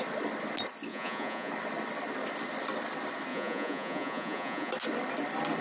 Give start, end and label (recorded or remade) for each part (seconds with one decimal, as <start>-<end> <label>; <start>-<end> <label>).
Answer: 0.0-0.9 recorded; 0.9-1.5 remade; 1.5-3.3 recorded; 3.3-4.7 remade; 4.7-5.6 recorded